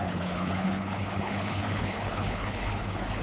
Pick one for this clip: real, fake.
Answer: fake